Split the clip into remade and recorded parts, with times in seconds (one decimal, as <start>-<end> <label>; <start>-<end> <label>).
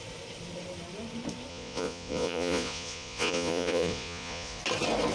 0.0-1.5 recorded; 1.5-4.6 remade; 4.6-5.1 recorded